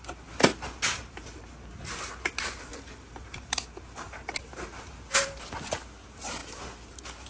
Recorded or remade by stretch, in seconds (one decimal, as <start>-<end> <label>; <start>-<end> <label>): 0.0-2.7 recorded; 2.7-4.5 remade; 4.5-7.3 recorded